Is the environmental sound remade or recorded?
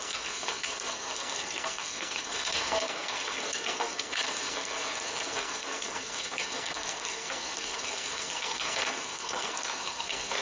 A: remade